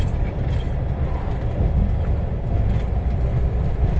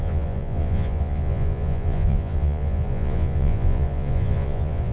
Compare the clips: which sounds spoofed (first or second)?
second